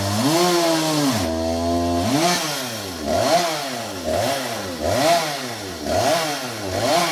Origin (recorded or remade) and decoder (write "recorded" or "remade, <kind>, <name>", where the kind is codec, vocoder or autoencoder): recorded